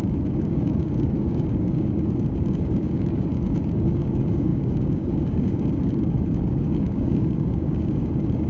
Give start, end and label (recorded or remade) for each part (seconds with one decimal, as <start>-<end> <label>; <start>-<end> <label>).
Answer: 0.0-8.5 remade